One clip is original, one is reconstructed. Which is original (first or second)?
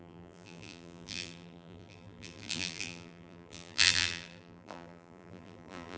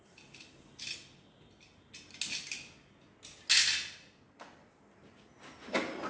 second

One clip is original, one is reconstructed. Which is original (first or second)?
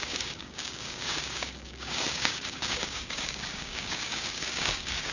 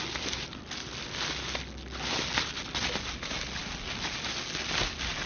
second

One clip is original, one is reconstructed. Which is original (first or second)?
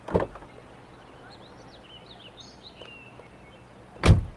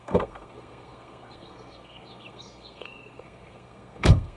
first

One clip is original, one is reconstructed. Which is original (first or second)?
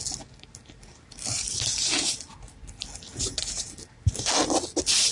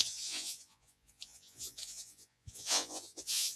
first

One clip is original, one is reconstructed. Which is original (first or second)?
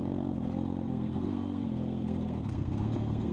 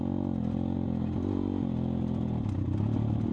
second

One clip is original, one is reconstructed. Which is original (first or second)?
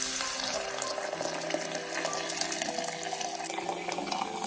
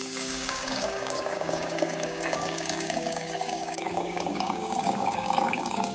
first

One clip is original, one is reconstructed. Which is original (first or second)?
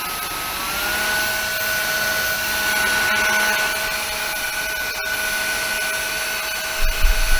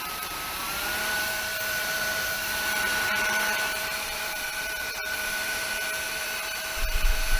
first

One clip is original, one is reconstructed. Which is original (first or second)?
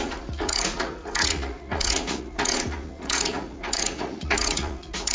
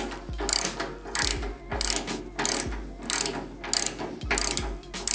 second